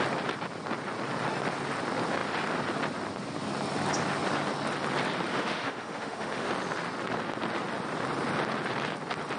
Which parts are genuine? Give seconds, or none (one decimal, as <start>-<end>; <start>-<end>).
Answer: 0.0-5.3; 6.5-9.4